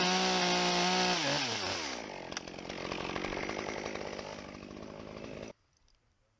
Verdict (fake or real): real